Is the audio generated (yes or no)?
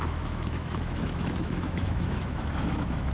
yes